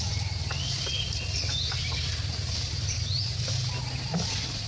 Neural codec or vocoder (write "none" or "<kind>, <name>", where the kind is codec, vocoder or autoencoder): none